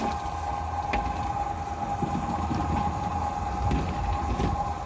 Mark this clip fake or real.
real